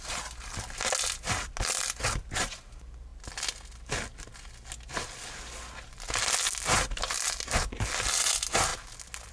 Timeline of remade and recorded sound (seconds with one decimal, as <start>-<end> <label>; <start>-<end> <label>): 0.0-9.3 recorded